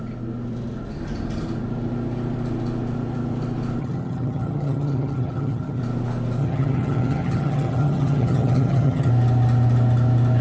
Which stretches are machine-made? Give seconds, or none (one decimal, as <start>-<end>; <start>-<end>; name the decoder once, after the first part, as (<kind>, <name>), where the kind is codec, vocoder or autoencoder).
3.8-5.8 (vocoder, HiFi-GAN); 6.4-9.1